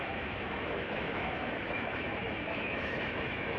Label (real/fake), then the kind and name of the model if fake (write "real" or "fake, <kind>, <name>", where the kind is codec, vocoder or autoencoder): fake, autoencoder, DAC-VAE